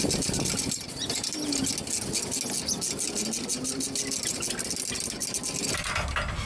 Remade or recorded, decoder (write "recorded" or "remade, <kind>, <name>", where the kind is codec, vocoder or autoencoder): recorded